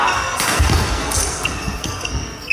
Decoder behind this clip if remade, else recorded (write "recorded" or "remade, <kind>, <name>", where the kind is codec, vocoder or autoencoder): remade, codec, SNAC